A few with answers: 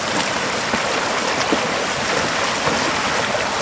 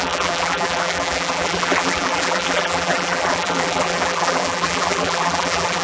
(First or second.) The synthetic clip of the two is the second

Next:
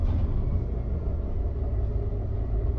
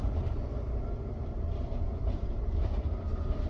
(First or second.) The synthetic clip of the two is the second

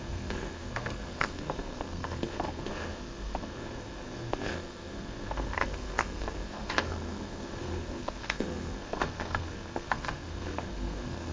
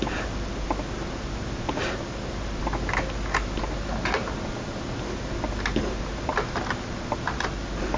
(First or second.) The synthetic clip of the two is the first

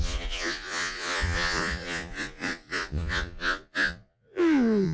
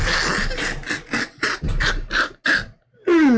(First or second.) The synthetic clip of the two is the first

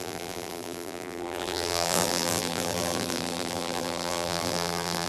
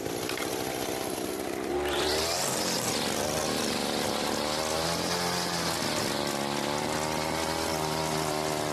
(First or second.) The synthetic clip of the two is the first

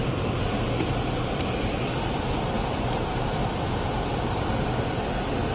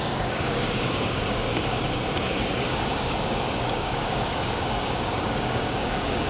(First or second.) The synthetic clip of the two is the second